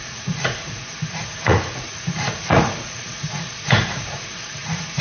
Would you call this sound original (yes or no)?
no